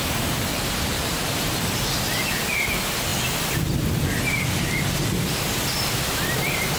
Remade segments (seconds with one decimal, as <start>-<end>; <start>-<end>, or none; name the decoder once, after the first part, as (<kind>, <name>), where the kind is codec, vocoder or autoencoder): 0.5-1.9 (vocoder, BigVGAN v2)